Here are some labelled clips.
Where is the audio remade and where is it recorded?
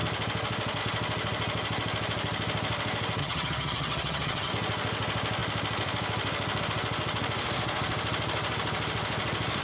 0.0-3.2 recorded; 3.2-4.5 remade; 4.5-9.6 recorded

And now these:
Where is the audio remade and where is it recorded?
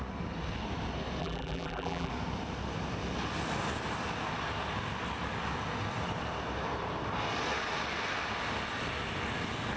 0.0-1.2 recorded; 1.2-2.1 remade; 2.1-9.8 recorded